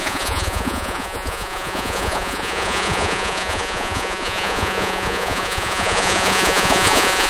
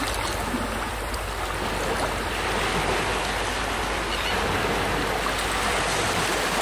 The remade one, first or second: first